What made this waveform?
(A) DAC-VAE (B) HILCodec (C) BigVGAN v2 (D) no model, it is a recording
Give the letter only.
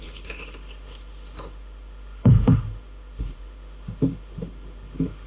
A